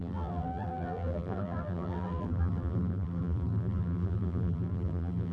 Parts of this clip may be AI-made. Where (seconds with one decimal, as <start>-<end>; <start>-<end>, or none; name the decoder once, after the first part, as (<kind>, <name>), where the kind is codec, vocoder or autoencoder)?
0.0-5.3 (vocoder, BigVGAN v2)

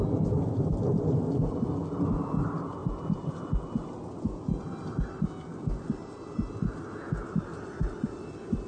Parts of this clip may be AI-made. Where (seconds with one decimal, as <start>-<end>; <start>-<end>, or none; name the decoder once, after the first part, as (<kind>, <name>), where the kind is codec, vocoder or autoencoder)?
2.8-3.3 (vocoder, BigVGAN v2)

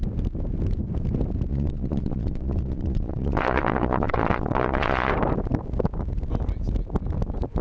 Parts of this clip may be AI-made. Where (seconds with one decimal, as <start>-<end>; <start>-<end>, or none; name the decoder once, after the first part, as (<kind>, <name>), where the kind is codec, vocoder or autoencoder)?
1.5-5.1 (vocoder, Vocos)

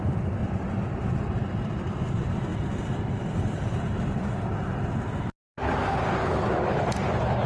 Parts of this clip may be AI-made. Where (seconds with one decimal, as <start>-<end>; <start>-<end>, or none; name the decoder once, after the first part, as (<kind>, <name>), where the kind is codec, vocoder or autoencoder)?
0.0-0.4 (vocoder, BigVGAN v2); 1.0-7.5

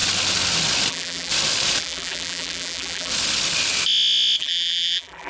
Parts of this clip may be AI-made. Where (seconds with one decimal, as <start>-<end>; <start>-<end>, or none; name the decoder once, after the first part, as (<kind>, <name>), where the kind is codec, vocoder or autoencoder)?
0.9-1.3 (vocoder, BigVGAN v2); 1.8-3.1; 4.4-5.3

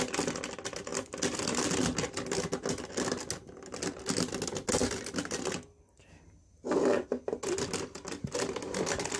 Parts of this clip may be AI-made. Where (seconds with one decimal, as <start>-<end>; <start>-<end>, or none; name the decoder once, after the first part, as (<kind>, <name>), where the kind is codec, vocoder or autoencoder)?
0.9-1.6 (vocoder, BigVGAN v2); 4.8-5.5

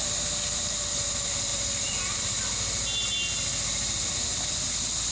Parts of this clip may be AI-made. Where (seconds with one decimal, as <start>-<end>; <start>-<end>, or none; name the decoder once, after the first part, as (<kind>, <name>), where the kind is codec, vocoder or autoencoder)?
none